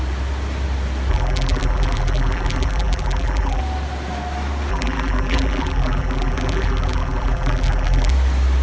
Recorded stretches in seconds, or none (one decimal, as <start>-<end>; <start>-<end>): 0.0-1.1; 3.6-4.7; 8.1-8.6